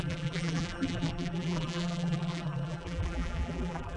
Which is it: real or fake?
fake